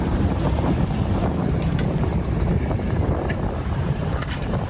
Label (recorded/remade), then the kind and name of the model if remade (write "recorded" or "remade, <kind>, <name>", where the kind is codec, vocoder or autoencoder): remade, vocoder, BigVGAN v2